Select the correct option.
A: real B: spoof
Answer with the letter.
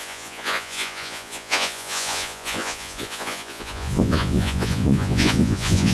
B